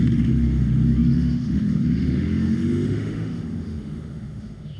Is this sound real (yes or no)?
no